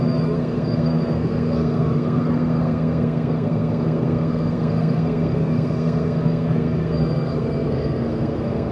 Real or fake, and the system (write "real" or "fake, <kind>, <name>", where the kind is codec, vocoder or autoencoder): fake, codec, SNAC